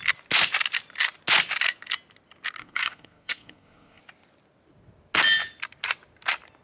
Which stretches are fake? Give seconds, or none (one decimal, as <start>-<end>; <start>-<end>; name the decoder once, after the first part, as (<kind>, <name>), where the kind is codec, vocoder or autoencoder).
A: 2.6-4.0 (codec, SNAC)